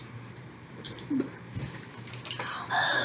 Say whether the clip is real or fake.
fake